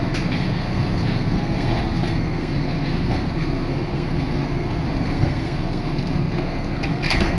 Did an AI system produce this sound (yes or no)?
yes